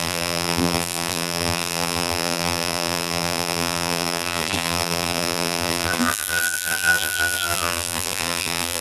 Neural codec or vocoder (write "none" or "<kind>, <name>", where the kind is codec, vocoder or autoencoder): vocoder, BigVGAN v2